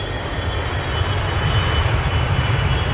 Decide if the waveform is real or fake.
real